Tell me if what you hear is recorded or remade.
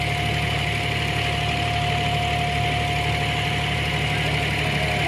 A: recorded